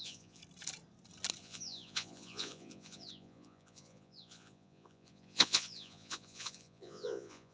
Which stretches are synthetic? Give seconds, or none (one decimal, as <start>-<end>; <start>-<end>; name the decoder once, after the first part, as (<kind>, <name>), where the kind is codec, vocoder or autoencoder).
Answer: 0.0-0.4 (vocoder, Vocos); 1.4-7.5